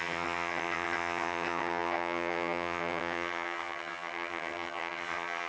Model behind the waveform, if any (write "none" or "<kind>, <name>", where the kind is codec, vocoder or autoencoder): vocoder, HiFi-GAN